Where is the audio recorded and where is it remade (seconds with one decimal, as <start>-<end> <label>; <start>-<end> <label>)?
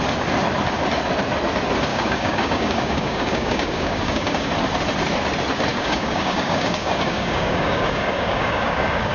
0.0-1.9 recorded; 1.9-4.5 remade; 4.5-5.7 recorded; 5.7-9.1 remade